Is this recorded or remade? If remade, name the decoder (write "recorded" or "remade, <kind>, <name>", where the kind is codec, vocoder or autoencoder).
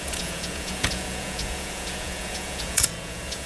remade, vocoder, Vocos